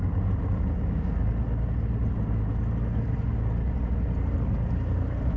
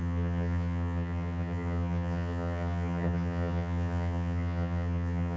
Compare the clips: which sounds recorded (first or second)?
first